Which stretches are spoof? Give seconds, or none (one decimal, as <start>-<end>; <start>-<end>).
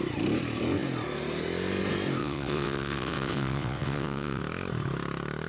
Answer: 2.2-4.4